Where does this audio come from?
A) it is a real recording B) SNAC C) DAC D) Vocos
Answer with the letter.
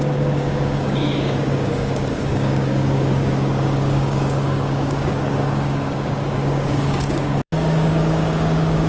C